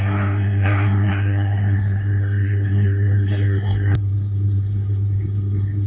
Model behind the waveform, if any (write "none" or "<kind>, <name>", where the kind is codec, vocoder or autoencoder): codec, SNAC